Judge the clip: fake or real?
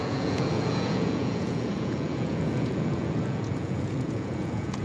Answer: fake